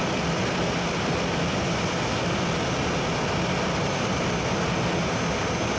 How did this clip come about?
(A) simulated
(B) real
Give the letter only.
B